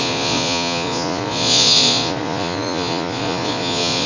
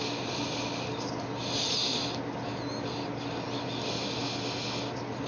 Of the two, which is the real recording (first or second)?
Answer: second